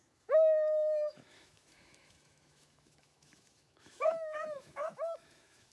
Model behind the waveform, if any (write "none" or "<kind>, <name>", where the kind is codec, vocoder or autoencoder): autoencoder, DAC-VAE